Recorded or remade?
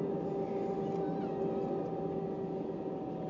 recorded